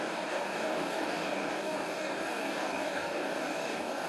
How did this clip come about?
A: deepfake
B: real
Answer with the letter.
A